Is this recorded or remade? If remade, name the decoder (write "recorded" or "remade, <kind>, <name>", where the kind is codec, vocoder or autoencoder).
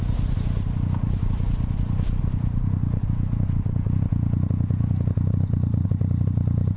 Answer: recorded